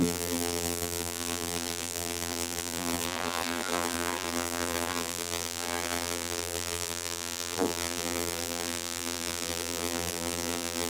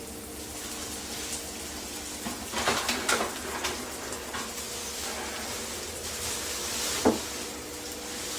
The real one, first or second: second